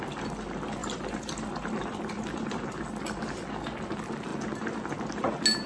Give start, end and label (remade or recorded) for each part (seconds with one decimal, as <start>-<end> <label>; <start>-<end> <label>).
0.0-0.8 recorded; 0.8-3.2 remade; 3.2-5.7 recorded